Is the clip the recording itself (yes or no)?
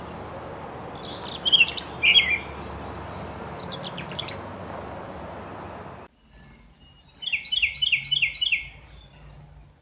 yes